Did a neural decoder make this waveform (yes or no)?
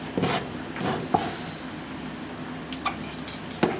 no